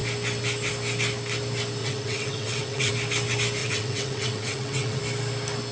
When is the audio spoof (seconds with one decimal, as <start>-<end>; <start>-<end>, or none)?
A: 1.8-2.9; 3.6-5.0

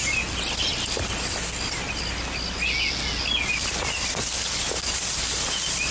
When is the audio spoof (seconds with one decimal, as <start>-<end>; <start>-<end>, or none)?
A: none

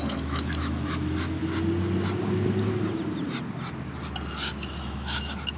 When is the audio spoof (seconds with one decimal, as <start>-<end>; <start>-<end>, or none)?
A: 0.0-1.4; 4.8-5.6

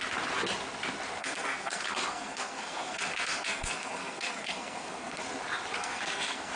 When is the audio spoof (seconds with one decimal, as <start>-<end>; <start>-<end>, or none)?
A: 1.2-5.2; 5.8-6.6

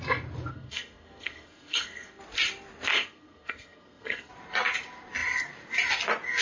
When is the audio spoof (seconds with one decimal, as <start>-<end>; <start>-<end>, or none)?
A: 0.5-2.2; 2.9-4.3

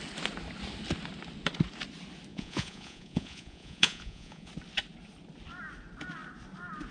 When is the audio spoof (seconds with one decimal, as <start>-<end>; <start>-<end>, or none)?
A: 2.3-4.5

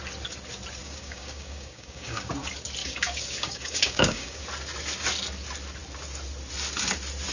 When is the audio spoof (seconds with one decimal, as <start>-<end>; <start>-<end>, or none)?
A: 0.8-2.3; 2.8-4.4

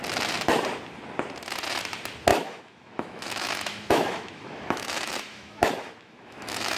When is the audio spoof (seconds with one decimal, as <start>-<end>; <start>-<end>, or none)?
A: 2.3-6.8